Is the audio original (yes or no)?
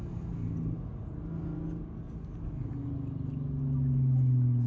yes